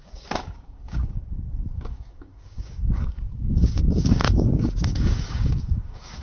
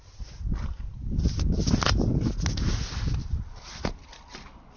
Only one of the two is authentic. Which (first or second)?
second